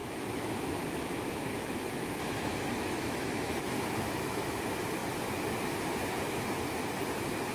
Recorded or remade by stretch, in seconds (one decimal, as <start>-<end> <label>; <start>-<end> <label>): 0.0-4.5 remade; 4.5-7.5 recorded